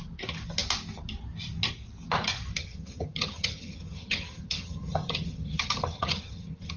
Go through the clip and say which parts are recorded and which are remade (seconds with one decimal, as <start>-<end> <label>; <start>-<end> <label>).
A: 0.0-2.6 recorded; 2.6-6.8 remade

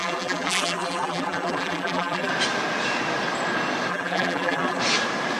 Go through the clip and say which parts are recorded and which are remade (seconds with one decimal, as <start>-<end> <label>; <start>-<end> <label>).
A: 0.0-2.3 remade; 2.3-3.9 recorded; 3.9-4.8 remade; 4.8-5.4 recorded

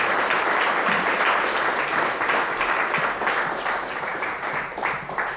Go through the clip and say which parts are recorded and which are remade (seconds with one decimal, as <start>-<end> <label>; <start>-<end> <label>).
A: 0.0-4.1 recorded; 4.1-5.4 remade

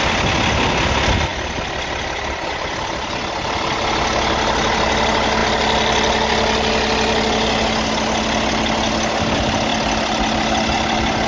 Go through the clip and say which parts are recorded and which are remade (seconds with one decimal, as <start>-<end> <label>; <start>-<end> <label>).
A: 0.0-11.3 recorded

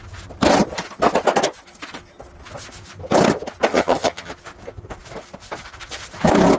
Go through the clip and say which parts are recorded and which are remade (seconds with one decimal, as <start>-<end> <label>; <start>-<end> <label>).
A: 0.0-3.7 recorded; 3.7-4.3 remade; 4.3-6.6 recorded

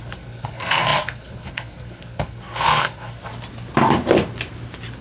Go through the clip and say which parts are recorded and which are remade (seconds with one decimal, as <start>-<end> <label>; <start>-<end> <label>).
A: 0.0-3.3 remade; 3.3-5.0 recorded